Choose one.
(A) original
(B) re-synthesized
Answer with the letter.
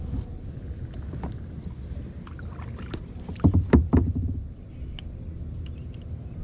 A